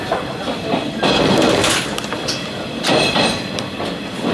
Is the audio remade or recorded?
recorded